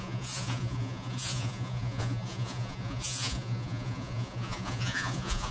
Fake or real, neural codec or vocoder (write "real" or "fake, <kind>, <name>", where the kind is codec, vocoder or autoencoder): fake, vocoder, Vocos